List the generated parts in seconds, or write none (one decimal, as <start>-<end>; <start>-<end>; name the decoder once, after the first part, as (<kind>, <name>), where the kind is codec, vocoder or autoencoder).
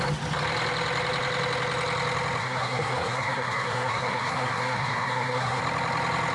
2.4-5.6 (codec, SNAC)